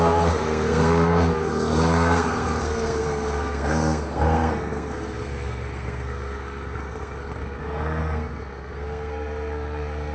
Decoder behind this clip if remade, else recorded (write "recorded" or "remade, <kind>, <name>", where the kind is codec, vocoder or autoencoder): remade, codec, SNAC